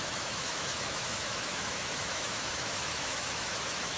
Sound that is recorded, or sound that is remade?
remade